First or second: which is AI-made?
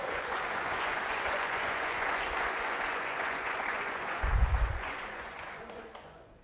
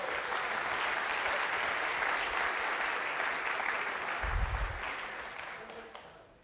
first